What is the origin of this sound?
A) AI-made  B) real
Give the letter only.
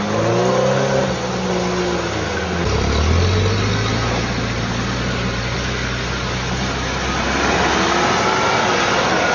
B